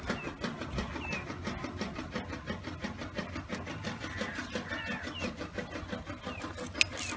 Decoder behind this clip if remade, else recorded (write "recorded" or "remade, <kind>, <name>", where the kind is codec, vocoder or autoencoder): recorded